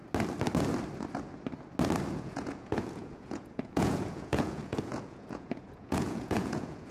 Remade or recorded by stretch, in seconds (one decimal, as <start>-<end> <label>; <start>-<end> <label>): 0.0-2.1 recorded; 2.1-6.9 remade